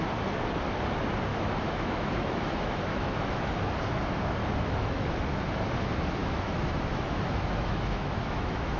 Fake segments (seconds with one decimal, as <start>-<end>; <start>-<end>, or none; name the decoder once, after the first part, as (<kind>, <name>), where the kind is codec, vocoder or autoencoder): 1.3-3.5 (autoencoder, DAC-VAE); 4.4-5.1; 6.2-8.8